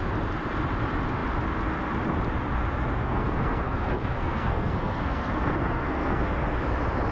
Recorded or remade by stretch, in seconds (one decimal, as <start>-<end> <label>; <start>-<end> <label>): 0.0-3.0 recorded; 3.0-6.2 remade; 6.2-7.1 recorded